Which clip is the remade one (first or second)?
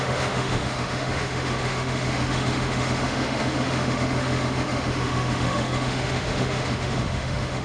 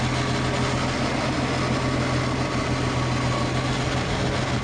first